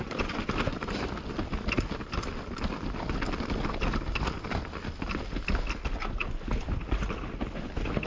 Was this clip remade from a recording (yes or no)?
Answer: no